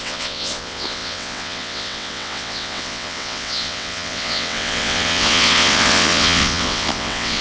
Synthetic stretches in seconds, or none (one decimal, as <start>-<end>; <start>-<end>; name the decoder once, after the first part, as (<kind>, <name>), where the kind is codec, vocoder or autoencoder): 0.0-7.4 (vocoder, WaveNeXt)

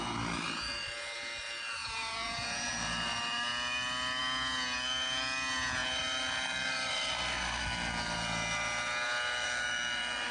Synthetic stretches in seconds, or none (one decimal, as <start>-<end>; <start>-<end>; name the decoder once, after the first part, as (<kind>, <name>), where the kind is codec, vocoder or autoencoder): 1.8-2.7 (vocoder, Vocos)

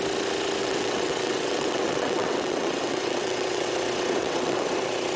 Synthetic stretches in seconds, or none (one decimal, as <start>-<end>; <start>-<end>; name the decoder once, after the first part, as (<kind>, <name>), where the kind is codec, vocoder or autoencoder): 0.6-3.7 (vocoder, WaveNeXt); 4.2-4.7